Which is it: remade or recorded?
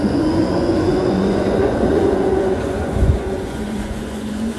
remade